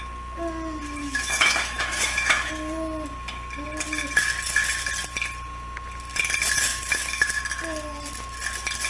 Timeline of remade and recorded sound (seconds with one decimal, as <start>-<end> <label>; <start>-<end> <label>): 0.0-1.0 recorded; 1.0-2.5 remade; 2.5-6.7 recorded; 6.7-7.4 remade; 7.4-8.9 recorded